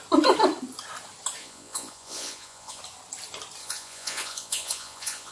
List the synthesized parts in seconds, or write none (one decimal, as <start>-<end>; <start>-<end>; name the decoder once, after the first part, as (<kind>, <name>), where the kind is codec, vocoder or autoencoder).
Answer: 1.4-2.8 (vocoder, Vocos); 3.6-5.3